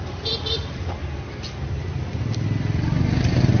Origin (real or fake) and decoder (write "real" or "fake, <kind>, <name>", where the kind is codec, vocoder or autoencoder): real